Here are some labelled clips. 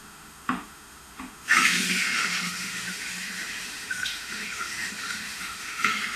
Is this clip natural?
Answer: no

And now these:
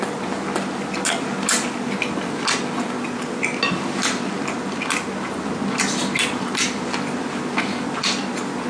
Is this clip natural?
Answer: yes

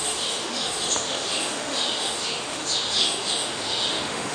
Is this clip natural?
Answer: no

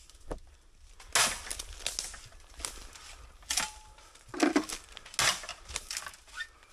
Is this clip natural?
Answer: yes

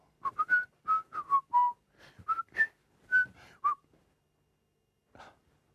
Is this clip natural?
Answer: yes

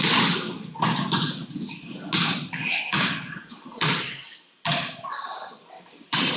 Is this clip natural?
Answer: yes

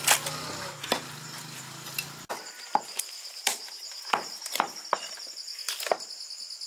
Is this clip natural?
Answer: yes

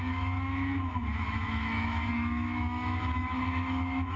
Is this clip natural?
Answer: no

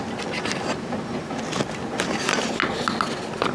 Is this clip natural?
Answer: yes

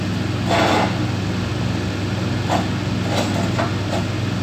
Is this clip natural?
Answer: yes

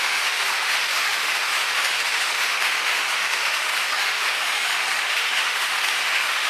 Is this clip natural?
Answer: no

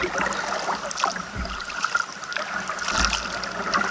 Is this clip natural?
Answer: yes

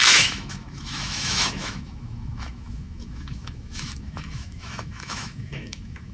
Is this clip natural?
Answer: no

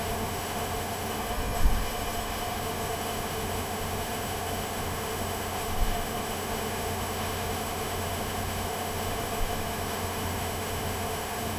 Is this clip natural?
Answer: no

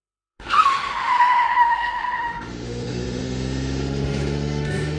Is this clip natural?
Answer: no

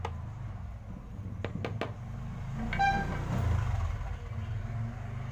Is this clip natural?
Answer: yes